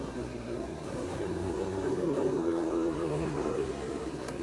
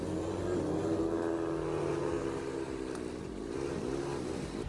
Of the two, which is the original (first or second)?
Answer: second